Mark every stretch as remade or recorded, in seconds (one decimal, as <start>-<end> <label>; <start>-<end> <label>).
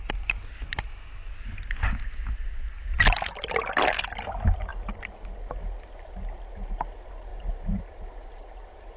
0.0-9.0 recorded